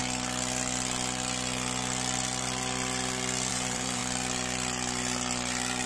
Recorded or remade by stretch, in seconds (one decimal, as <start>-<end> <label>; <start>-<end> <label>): 0.0-3.5 recorded; 3.5-4.0 remade; 4.0-5.9 recorded